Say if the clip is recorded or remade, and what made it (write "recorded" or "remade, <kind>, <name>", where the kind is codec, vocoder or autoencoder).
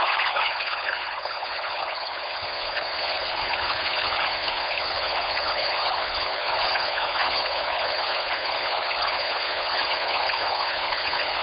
remade, codec, HILCodec